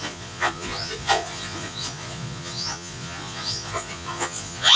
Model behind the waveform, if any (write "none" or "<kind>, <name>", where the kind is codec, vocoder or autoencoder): vocoder, Vocos